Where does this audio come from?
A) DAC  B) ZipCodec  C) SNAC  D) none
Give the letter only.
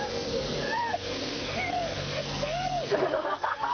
C